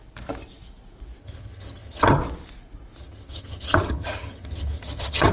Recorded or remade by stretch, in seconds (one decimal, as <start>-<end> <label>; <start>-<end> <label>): 0.0-1.2 recorded; 1.2-2.2 remade; 2.2-3.0 recorded; 3.0-5.3 remade